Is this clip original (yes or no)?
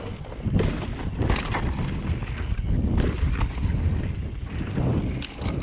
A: yes